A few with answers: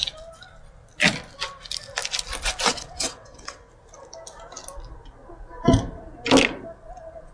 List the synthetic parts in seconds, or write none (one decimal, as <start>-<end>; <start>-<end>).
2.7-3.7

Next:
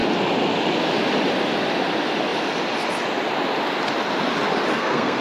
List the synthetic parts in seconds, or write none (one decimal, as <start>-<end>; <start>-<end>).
4.7-5.2

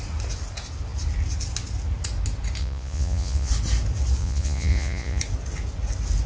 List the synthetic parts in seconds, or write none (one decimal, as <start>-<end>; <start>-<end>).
2.6-3.5; 4.2-5.2

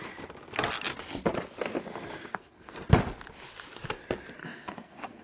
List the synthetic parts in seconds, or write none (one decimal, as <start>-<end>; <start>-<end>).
2.3-2.9; 4.4-5.2

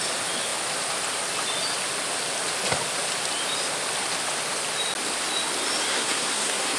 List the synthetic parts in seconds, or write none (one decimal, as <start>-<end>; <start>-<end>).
5.9-6.8